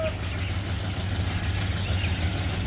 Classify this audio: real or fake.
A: real